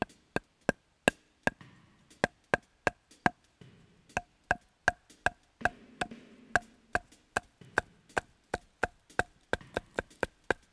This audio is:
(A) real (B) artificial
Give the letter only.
A